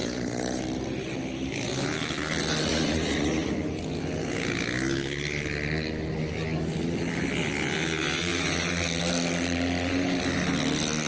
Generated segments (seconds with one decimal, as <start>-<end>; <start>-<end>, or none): 0.0-0.6; 2.7-3.5